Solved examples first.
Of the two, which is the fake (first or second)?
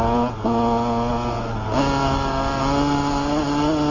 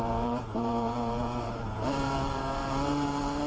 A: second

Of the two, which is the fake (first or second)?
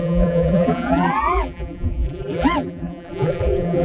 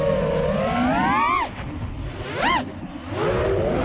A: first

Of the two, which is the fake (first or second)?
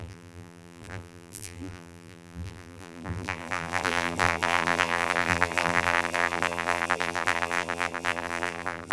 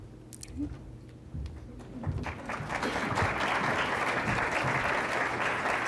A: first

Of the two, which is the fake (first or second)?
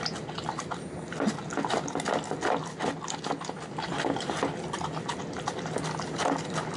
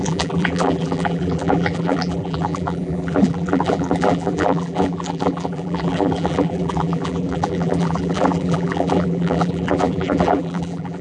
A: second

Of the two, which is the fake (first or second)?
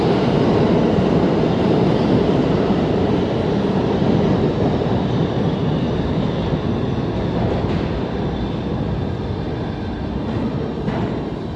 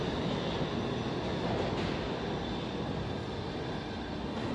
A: first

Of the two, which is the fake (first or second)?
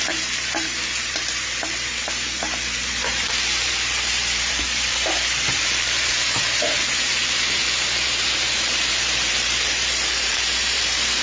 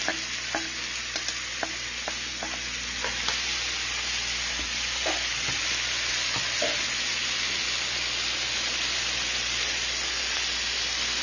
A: first